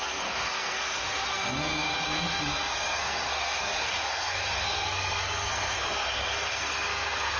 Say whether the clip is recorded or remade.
remade